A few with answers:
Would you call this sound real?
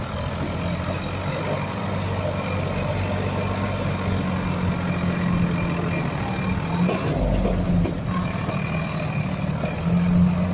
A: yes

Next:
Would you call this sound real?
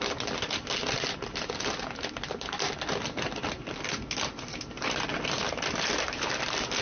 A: yes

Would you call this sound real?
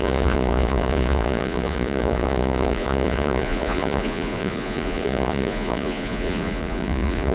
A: no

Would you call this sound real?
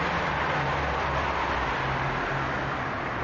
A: yes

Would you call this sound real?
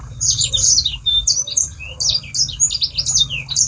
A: yes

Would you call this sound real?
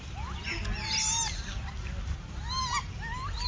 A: yes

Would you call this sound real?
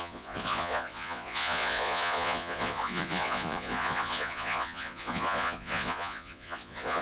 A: no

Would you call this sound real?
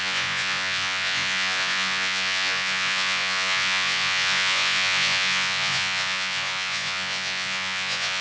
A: no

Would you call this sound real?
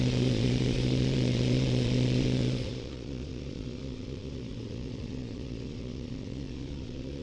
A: no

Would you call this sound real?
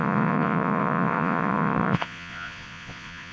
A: no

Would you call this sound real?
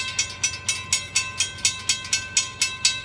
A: yes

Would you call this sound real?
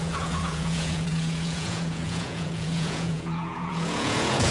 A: no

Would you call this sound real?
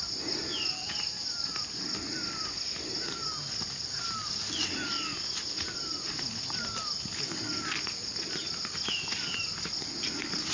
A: yes